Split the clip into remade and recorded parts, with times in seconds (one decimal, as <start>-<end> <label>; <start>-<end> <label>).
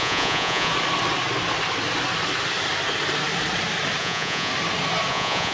0.0-0.7 remade; 0.7-4.0 recorded; 4.0-4.5 remade; 4.5-5.1 recorded; 5.1-5.5 remade